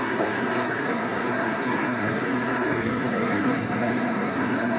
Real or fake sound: fake